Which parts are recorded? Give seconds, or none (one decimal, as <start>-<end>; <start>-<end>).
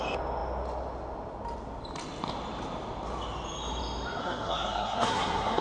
0.0-4.2